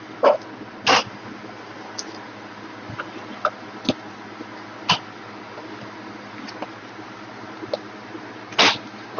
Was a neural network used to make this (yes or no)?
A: no